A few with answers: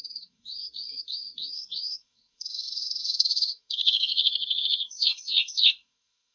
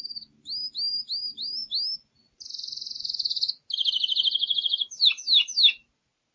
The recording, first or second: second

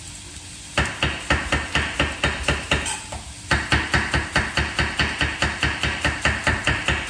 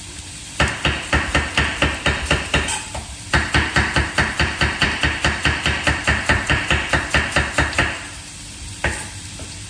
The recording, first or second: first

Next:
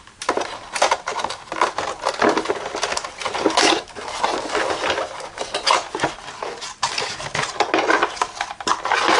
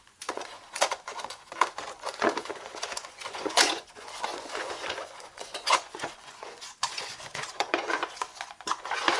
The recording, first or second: first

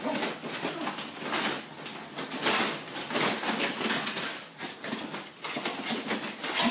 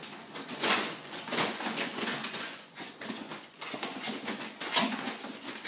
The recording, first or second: first